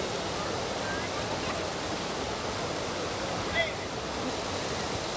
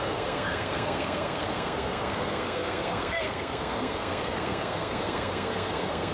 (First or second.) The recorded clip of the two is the first